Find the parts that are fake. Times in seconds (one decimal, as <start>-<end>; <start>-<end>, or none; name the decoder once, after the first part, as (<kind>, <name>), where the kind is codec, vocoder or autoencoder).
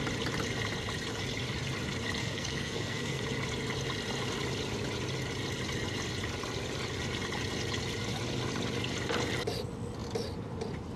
2.2-3.2 (codec, SNAC)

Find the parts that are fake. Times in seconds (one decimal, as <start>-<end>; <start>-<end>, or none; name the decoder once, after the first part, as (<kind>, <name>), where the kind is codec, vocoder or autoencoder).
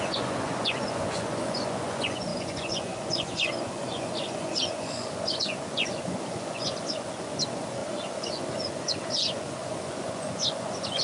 0.0-11.0 (vocoder, Vocos)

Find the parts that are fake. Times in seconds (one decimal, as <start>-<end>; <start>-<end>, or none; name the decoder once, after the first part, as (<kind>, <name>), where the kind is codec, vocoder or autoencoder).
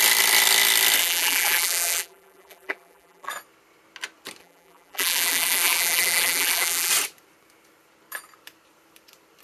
1.0-3.3 (vocoder, BigVGAN v2); 4.4-6.9